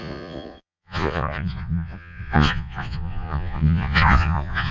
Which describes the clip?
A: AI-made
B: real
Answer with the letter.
A